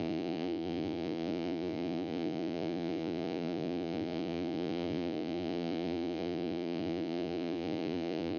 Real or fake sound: fake